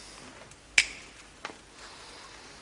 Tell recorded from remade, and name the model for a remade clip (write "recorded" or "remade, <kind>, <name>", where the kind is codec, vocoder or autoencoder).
recorded